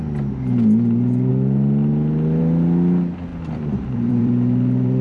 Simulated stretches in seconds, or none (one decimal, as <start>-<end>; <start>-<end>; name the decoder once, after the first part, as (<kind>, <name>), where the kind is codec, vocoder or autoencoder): 3.3-5.0 (vocoder, BigVGAN v2)